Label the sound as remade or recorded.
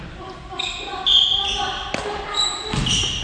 recorded